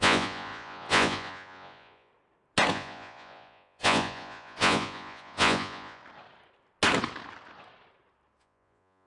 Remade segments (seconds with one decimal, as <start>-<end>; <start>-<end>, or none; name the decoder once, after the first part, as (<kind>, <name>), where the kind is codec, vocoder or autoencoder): 0.0-2.1 (vocoder, Vocos); 2.7-6.0; 8.4-9.1